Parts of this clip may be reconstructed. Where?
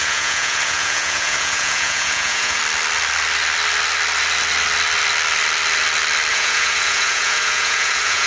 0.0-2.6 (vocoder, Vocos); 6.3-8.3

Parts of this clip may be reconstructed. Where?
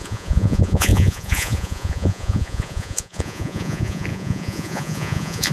0.0-5.5 (vocoder, Vocos)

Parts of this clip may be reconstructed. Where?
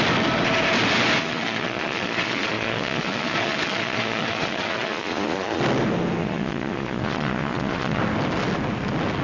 1.2-5.6 (vocoder, Vocos); 6.2-8.0